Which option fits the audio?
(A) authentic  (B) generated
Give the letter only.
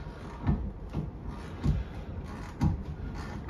B